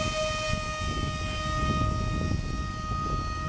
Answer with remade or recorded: recorded